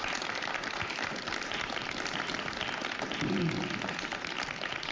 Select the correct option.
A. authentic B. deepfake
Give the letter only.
A